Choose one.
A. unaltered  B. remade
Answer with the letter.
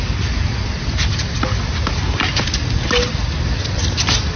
A